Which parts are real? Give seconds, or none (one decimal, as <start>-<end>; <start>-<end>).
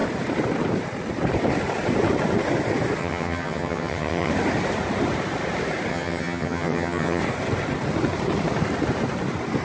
0.0-3.0; 4.3-5.9; 7.2-9.6